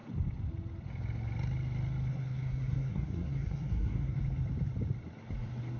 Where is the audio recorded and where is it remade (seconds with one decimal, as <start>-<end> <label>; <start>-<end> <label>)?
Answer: 0.0-2.1 recorded; 2.1-4.2 remade; 4.2-5.8 recorded